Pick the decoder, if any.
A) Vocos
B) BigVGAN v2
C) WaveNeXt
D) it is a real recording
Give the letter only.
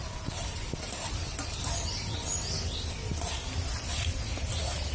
D